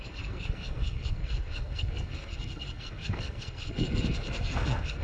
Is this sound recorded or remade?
remade